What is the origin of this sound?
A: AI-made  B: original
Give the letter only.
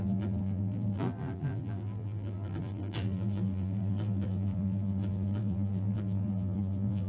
A